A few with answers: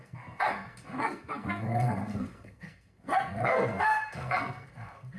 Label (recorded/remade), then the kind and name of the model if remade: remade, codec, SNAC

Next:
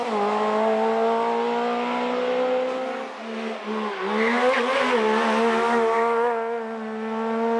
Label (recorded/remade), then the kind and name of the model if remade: recorded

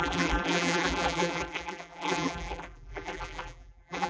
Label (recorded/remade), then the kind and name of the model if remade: remade, vocoder, BigVGAN v2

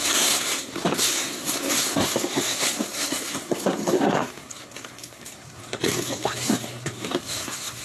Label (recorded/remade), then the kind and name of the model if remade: remade, codec, SNAC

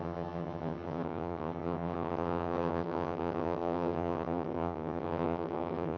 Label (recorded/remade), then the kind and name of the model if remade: remade, vocoder, HiFi-GAN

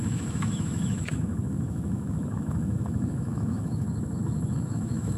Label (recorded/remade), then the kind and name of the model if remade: remade, autoencoder, DAC-VAE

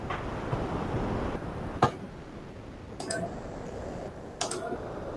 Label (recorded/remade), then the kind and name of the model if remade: recorded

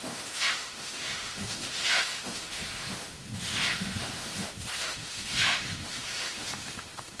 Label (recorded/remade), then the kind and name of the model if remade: remade, autoencoder, DAC-VAE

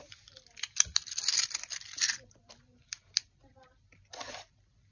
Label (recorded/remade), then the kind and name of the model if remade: remade, vocoder, BigVGAN v2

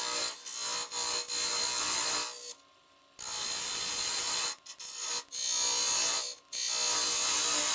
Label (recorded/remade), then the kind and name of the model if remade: recorded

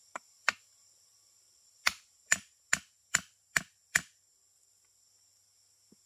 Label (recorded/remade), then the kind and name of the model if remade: recorded